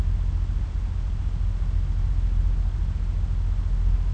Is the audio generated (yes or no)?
no